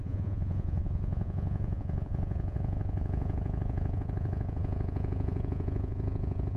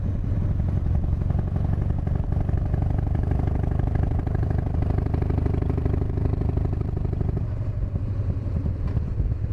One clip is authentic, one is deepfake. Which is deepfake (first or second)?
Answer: first